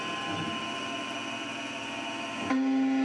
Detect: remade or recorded recorded